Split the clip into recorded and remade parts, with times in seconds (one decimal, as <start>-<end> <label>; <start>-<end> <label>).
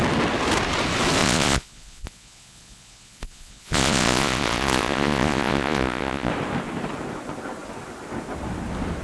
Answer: 0.0-1.2 recorded; 1.2-6.3 remade; 6.3-9.0 recorded